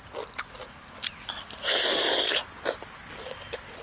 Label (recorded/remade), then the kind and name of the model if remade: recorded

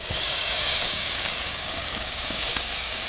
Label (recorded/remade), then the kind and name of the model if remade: remade, codec, DAC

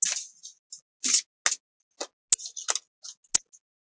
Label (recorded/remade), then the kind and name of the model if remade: recorded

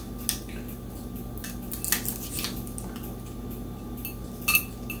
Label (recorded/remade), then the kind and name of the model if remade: recorded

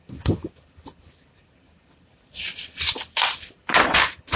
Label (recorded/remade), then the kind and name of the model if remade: recorded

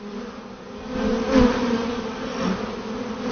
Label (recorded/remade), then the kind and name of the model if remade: recorded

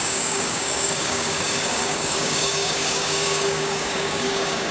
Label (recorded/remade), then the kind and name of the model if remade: remade, codec, DAC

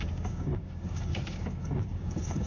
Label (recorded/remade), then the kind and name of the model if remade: remade, codec, DAC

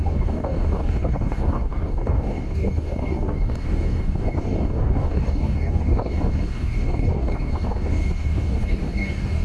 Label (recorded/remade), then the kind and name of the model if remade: remade, codec, DAC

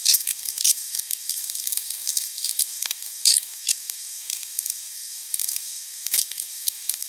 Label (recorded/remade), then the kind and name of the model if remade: remade, codec, DAC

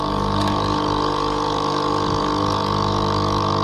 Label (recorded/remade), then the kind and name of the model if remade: remade, codec, DAC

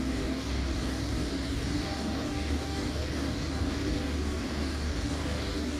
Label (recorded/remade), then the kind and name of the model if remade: remade, codec, DAC